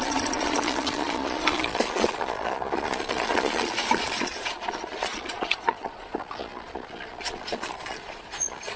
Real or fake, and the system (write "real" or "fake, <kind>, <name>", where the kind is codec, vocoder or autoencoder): fake, vocoder, Vocos